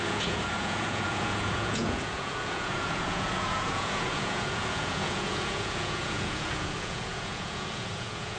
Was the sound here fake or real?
fake